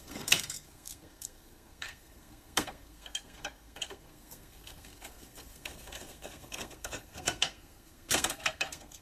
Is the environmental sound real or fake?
fake